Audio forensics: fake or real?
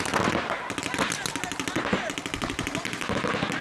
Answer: real